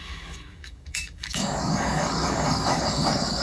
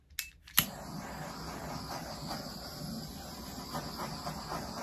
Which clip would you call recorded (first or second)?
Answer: second